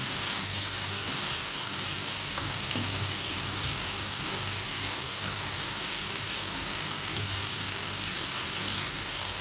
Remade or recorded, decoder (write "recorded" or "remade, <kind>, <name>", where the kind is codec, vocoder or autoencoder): remade, codec, DAC